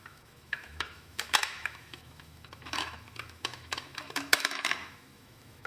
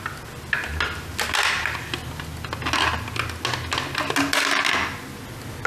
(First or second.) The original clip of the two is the second